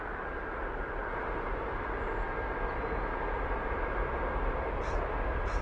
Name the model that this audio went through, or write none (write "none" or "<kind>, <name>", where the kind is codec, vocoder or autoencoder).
none